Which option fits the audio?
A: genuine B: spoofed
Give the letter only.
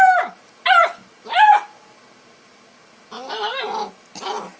A